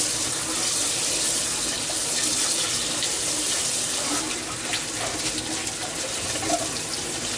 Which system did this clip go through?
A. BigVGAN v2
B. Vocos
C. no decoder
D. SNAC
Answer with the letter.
C